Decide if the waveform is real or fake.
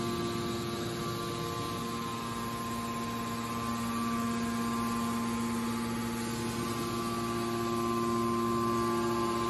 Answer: real